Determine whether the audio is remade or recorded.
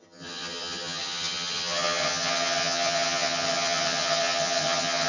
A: remade